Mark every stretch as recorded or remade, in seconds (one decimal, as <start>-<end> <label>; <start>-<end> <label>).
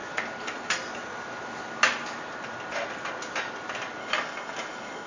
0.0-4.0 recorded; 4.0-5.1 remade